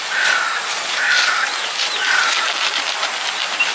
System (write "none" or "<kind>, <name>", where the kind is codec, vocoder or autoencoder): none